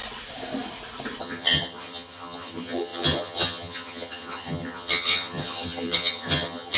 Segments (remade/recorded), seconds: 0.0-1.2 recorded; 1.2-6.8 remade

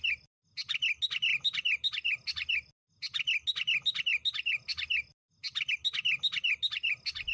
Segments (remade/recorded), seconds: 0.0-7.3 recorded